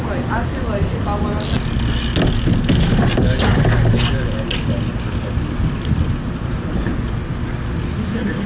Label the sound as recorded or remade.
recorded